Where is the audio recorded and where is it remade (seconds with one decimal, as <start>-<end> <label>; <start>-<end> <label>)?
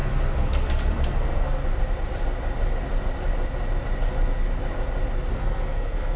0.0-1.6 remade; 1.6-5.3 recorded; 5.3-6.2 remade